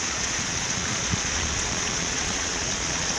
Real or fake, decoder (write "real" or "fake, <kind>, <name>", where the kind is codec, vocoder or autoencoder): fake, vocoder, Vocos